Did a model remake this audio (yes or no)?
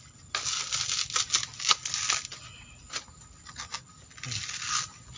no